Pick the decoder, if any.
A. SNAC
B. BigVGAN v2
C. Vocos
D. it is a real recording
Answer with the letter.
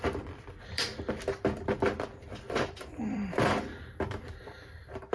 B